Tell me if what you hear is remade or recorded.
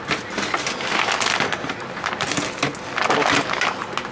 recorded